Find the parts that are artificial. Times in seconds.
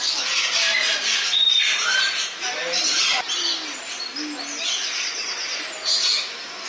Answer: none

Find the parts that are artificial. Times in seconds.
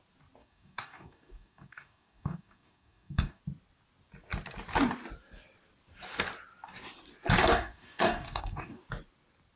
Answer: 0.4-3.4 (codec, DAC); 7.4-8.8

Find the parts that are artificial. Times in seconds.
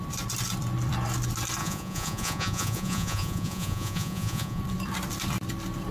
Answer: 1.6-4.6 (vocoder, Vocos)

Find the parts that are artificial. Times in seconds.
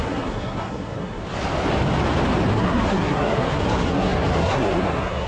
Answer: 0.0-1.2 (codec, SNAC); 2.5-5.3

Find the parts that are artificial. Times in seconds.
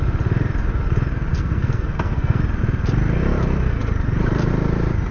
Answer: 1.3-2.4 (codec, SNAC)